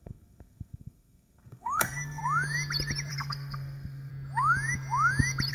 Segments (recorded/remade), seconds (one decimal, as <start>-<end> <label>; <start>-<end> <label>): 0.0-2.2 remade; 2.2-3.1 recorded; 3.1-4.1 remade; 4.1-5.5 recorded